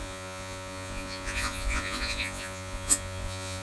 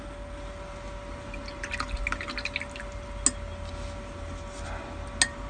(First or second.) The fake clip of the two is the first